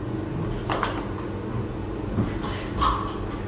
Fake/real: real